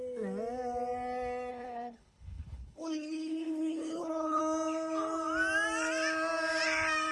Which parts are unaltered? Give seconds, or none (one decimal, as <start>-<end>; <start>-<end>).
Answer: 0.0-1.5; 4.4-7.1